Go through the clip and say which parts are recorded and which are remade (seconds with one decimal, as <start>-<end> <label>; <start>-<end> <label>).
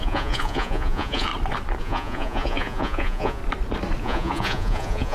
0.0-1.3 remade; 1.3-1.8 recorded; 1.8-3.4 remade; 3.4-4.0 recorded; 4.0-5.1 remade